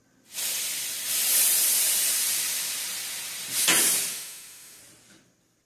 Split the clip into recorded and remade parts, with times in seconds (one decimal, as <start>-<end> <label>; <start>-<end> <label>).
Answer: 0.0-4.1 recorded; 4.1-4.8 remade; 4.8-5.7 recorded